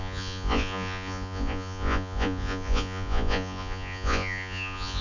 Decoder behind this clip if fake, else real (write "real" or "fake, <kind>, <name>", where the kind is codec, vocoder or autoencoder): fake, vocoder, Vocos